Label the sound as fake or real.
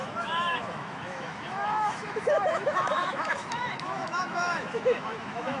fake